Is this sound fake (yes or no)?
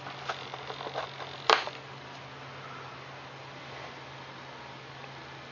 no